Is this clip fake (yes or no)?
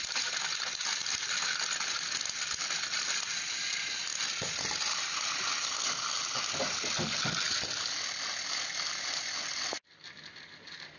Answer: no